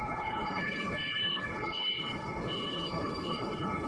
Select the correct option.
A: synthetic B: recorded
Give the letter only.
A